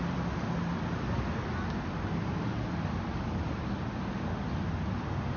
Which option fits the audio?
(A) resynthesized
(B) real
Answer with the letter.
B